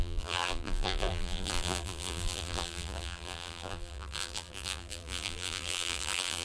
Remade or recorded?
remade